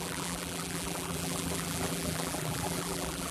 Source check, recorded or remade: remade